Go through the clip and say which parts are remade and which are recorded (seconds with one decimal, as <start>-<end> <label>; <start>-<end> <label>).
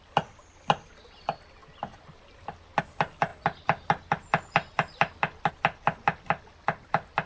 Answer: 0.0-7.3 recorded